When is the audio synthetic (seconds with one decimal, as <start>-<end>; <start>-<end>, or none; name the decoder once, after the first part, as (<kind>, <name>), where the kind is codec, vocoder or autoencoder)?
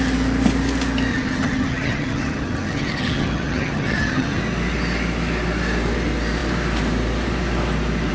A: 1.1-4.4 (vocoder, HiFi-GAN)